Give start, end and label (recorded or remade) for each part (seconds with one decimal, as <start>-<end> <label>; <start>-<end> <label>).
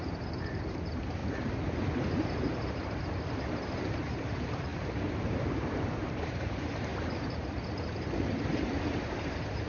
0.0-1.2 remade; 1.2-2.3 recorded; 2.3-6.9 remade; 6.9-9.1 recorded; 9.1-9.7 remade